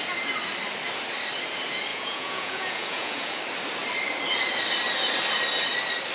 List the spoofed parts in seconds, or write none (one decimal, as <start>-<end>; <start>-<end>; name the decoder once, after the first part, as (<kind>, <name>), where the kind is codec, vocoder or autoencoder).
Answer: 1.9-3.4 (vocoder, Vocos)